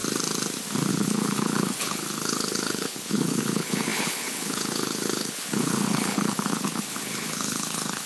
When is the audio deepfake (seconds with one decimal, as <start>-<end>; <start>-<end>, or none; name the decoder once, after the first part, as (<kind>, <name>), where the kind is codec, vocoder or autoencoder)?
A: 0.9-8.1 (codec, HILCodec)